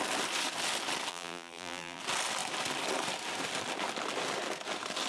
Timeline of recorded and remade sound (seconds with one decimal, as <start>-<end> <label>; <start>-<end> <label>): 0.0-1.1 recorded; 1.1-2.0 remade; 2.0-5.1 recorded

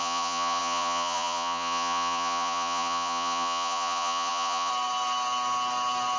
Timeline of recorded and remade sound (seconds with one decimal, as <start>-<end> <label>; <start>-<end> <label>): 0.0-4.7 remade; 4.7-6.2 recorded

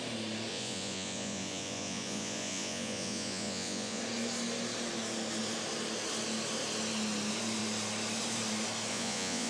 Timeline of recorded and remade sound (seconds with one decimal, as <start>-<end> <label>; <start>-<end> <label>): 0.0-0.5 recorded; 0.5-4.0 remade; 4.0-8.9 recorded; 8.9-9.5 remade

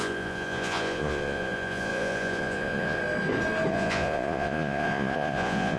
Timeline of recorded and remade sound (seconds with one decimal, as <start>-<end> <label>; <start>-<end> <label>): 0.0-3.0 remade; 3.0-3.7 recorded; 3.7-5.8 remade

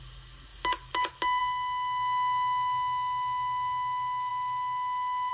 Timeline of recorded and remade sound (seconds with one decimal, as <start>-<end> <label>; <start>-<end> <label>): 0.0-5.3 recorded

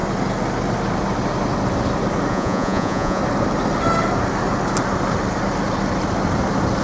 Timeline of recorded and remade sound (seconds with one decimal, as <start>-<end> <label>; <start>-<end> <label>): 0.0-2.3 recorded; 2.3-3.2 remade; 3.2-6.8 recorded